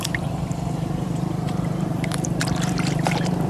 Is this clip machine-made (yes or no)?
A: yes